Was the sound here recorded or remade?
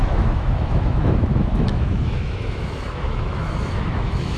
remade